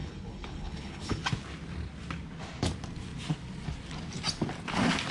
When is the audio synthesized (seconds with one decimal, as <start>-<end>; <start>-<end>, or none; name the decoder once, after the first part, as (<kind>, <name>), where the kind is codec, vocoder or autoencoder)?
0.0-1.2 (codec, HILCodec)